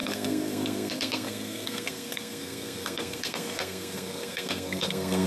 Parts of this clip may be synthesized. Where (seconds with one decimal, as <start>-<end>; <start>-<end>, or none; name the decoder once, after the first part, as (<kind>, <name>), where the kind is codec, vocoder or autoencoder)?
0.0-5.3 (codec, SNAC)